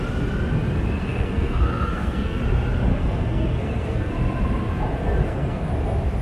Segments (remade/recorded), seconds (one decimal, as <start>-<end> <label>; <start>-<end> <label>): 0.0-1.0 recorded; 1.0-2.4 remade; 2.4-2.9 recorded; 2.9-4.1 remade; 4.1-5.2 recorded; 5.2-5.7 remade; 5.7-6.2 recorded